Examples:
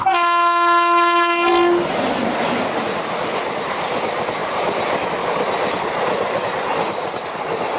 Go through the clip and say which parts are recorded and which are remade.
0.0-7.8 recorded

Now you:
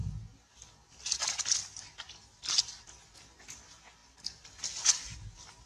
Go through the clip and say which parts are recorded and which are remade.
0.0-5.7 recorded